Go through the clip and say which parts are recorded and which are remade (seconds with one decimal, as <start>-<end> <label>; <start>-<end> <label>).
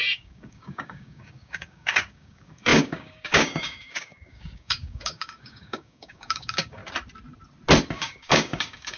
0.0-6.8 remade; 6.8-7.9 recorded; 7.9-9.0 remade